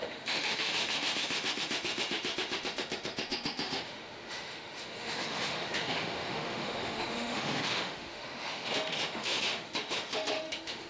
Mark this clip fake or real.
fake